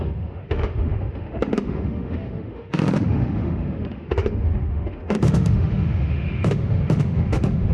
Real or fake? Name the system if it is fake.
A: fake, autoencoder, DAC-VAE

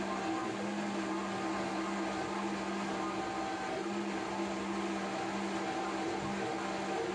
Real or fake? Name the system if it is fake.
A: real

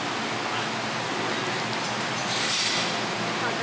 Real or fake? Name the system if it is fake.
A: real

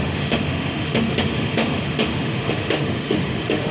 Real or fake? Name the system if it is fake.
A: fake, autoencoder, DAC-VAE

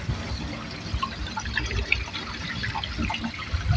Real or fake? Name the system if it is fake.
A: real